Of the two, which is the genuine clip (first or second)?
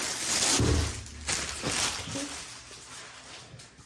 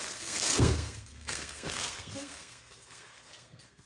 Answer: first